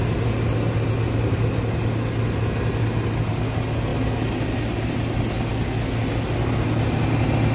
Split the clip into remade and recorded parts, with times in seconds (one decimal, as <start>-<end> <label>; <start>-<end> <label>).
0.0-7.5 recorded